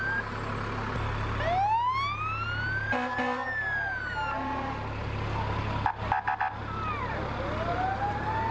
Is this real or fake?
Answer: real